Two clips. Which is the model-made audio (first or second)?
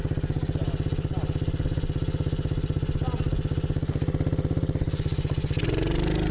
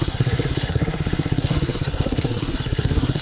second